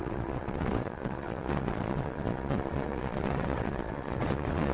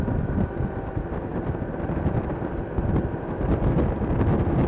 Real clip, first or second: second